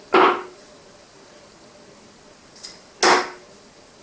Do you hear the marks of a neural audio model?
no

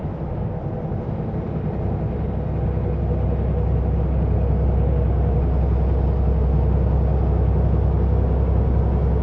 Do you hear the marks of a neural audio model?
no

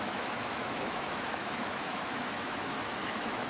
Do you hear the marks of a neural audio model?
yes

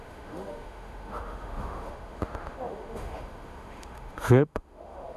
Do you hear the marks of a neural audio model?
yes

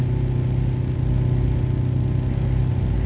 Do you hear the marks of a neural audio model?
no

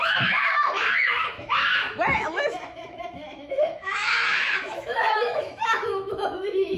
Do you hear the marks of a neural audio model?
yes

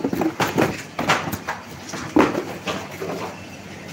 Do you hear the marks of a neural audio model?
no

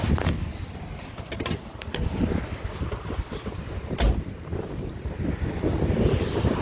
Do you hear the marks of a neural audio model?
no